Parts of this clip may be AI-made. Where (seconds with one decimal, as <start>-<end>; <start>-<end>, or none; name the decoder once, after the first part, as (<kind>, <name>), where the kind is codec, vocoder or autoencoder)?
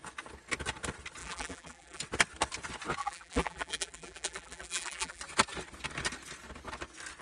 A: 1.2-2.0 (vocoder, BigVGAN v2); 3.0-5.2